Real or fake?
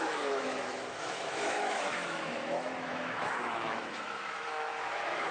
fake